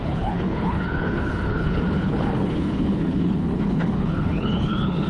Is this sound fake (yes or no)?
yes